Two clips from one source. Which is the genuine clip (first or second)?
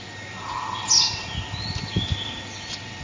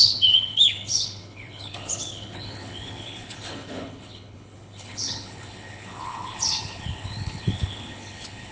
first